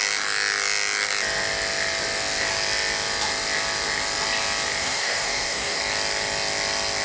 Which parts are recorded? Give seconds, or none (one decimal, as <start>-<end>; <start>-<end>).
0.0-4.8; 5.8-7.0